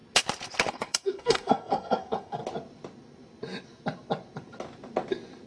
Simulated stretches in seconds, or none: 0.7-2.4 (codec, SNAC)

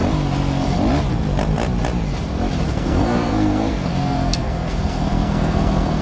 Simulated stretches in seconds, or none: 2.7-6.0 (codec, SNAC)